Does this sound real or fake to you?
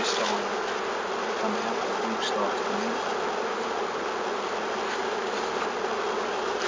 real